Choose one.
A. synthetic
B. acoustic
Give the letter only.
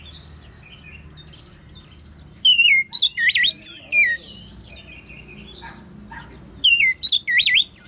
B